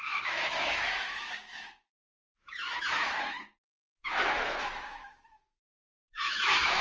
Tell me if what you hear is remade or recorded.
remade